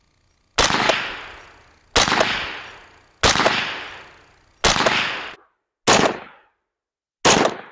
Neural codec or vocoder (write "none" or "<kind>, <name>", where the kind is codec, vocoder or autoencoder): none